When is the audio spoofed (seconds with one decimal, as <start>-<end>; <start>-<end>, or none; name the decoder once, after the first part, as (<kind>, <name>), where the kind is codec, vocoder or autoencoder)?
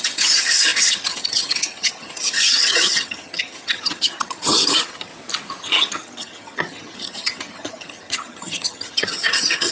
0.0-5.1 (vocoder, HiFi-GAN); 5.6-9.7